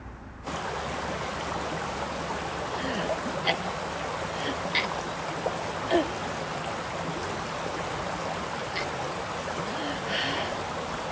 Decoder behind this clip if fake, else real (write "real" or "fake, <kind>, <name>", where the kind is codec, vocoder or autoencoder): real